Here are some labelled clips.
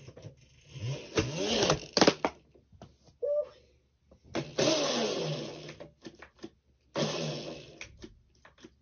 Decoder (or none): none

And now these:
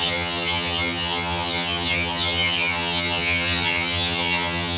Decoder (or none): vocoder, HiFi-GAN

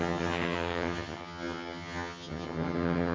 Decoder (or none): vocoder, HiFi-GAN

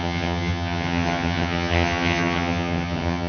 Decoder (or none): vocoder, HiFi-GAN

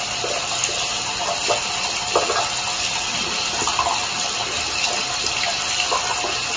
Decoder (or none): none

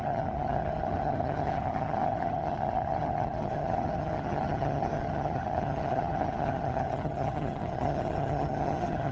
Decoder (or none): vocoder, HiFi-GAN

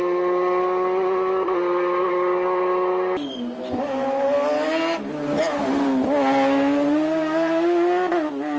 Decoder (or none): none